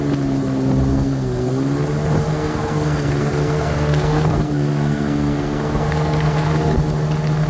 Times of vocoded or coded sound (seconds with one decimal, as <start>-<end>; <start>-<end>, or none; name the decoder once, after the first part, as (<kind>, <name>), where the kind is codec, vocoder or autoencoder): 0.9-1.5 (codec, SNAC); 2.3-6.8